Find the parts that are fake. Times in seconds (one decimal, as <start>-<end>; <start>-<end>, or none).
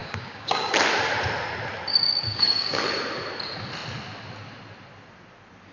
0.0-0.7; 1.9-2.8